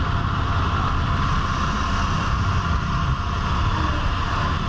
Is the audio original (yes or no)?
yes